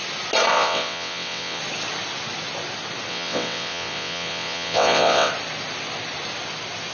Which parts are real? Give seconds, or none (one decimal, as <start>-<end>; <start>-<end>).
0.0-0.5; 1.6-3.1; 5.3-6.9

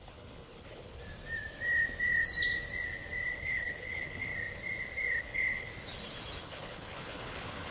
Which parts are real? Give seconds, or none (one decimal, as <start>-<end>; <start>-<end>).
1.0-3.3; 4.3-5.2; 5.7-6.4

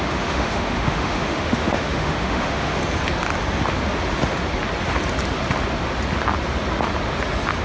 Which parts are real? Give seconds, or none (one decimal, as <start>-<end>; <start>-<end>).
2.8-7.6

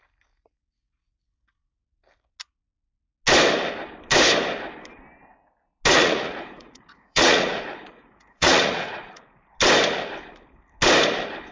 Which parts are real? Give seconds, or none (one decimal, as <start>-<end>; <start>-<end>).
0.0-5.9; 9.2-11.5